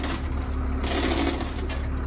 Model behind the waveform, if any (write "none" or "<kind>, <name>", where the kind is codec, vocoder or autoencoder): none